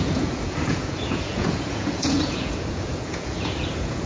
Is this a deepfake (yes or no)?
yes